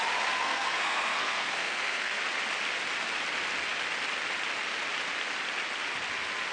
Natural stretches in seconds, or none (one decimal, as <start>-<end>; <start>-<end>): 0.0-0.4; 2.2-6.5